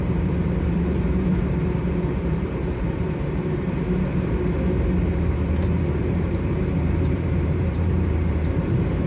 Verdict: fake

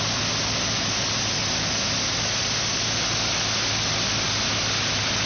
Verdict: real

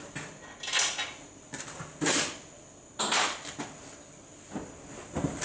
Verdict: real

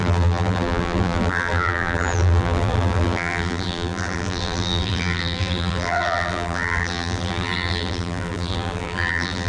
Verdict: fake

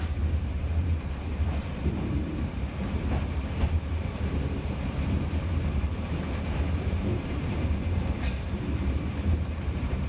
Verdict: fake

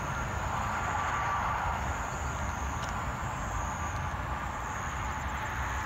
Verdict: real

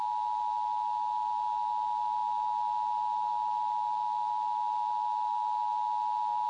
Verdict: real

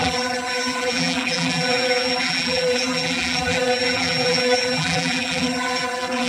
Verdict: fake